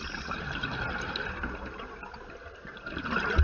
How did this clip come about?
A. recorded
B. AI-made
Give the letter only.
A